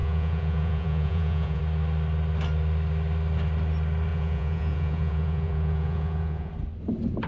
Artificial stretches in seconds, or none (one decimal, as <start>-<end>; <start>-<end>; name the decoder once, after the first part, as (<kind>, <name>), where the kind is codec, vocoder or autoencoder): 0.0-1.6 (vocoder, Vocos); 4.1-6.5